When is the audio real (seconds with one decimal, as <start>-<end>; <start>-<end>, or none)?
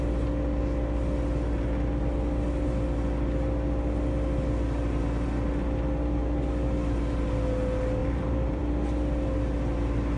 0.0-8.0; 8.6-10.2